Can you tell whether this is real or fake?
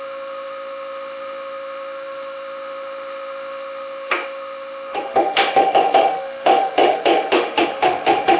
fake